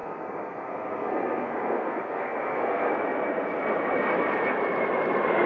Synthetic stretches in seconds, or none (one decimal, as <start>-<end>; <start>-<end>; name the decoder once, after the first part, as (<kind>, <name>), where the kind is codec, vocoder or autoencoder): 0.0-2.9 (codec, SNAC)